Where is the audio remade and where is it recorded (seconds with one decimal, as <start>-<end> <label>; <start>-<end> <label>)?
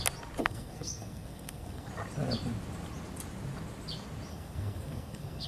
0.0-0.4 recorded; 0.4-1.9 remade; 1.9-4.3 recorded; 4.3-5.5 remade